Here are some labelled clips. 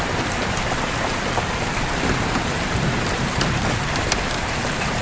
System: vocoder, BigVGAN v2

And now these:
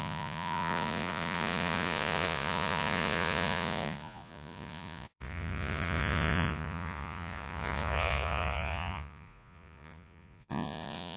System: vocoder, Vocos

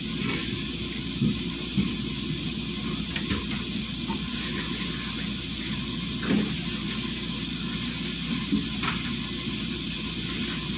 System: none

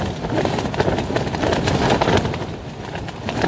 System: none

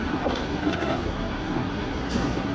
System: codec, SNAC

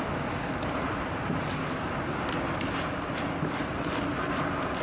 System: none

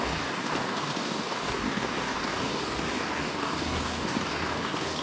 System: codec, DAC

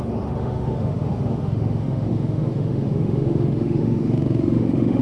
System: autoencoder, DAC-VAE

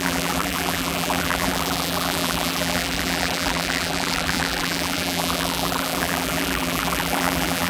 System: vocoder, BigVGAN v2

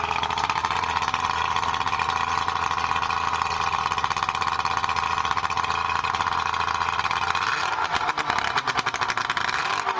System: none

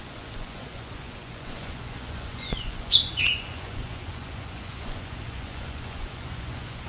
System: vocoder, Vocos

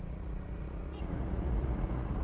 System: vocoder, Vocos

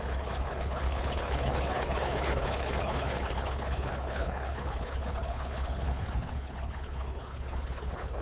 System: codec, HILCodec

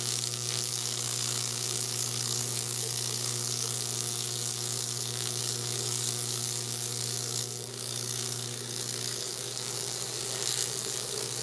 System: codec, DAC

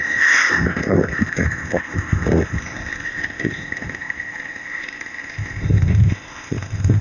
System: codec, ZipCodec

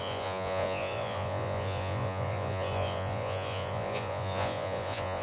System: vocoder, Vocos